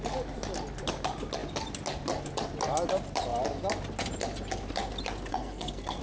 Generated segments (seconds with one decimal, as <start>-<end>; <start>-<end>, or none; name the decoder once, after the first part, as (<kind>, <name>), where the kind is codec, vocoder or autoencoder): 5.3-6.0 (codec, SNAC)